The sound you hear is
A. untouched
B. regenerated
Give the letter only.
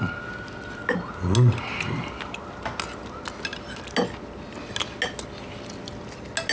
A